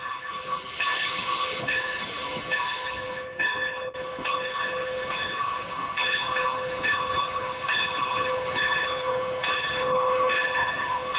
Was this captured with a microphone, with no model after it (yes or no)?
no